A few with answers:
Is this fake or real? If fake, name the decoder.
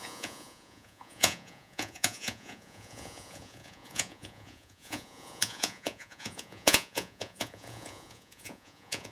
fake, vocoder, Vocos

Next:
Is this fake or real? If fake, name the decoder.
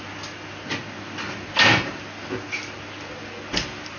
real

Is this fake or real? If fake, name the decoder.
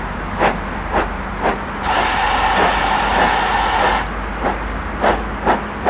real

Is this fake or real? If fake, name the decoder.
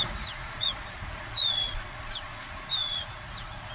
fake, vocoder, Vocos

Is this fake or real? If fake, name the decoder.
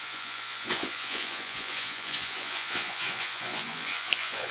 fake, vocoder, Vocos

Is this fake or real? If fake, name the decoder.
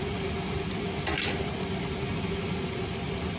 real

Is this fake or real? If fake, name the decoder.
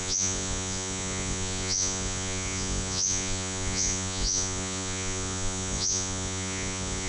fake, vocoder, Vocos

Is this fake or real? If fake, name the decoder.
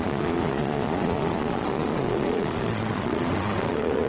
fake, vocoder, Vocos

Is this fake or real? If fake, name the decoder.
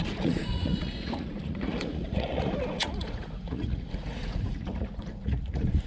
fake, vocoder, Vocos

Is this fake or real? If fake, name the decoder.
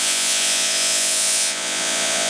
fake, vocoder, Vocos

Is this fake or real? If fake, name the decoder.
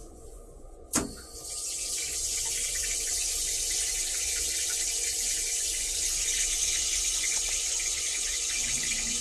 fake, vocoder, Vocos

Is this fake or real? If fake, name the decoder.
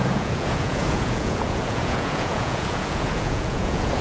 fake, vocoder, Vocos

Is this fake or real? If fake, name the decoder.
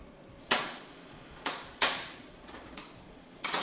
fake, vocoder, Vocos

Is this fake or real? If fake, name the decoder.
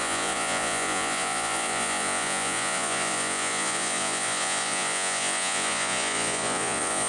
fake, vocoder, Vocos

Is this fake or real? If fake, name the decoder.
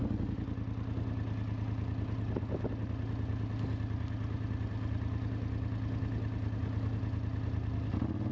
real